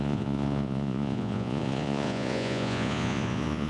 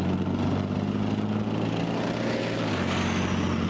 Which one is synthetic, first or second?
first